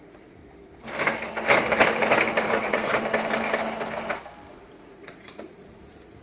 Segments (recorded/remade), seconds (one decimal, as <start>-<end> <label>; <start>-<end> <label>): 0.0-0.4 remade; 0.4-2.4 recorded; 2.4-2.9 remade; 2.9-4.5 recorded; 4.5-6.2 remade

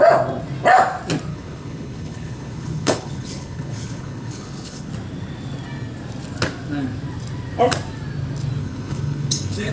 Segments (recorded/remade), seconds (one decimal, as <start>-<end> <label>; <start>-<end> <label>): 0.0-1.3 recorded; 1.3-4.9 remade; 4.9-8.6 recorded; 8.6-9.7 remade

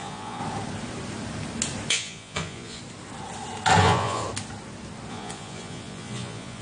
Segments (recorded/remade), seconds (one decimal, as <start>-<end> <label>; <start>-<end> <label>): 0.0-0.4 remade; 0.4-1.9 recorded; 1.9-2.8 remade; 2.8-3.8 recorded; 3.8-4.2 remade; 4.2-5.1 recorded; 5.1-6.6 remade

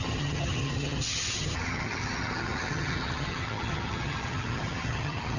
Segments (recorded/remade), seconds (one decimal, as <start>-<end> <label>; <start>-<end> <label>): 0.0-5.4 remade

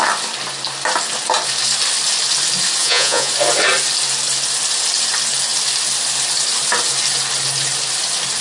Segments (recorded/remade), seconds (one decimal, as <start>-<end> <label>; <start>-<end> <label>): 0.0-2.8 recorded; 2.8-3.3 remade; 3.3-8.4 recorded

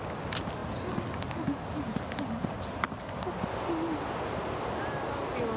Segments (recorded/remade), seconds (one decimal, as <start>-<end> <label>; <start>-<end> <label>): 0.0-5.6 recorded

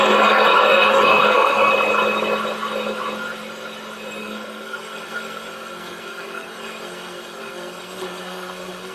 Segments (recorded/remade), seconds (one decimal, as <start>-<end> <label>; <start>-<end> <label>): 0.0-1.7 remade; 1.7-4.2 recorded; 4.2-8.9 remade